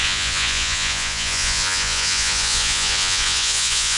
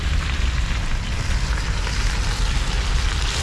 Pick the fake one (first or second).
first